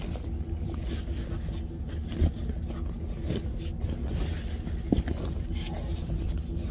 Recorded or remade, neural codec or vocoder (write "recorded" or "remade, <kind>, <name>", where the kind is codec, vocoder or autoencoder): recorded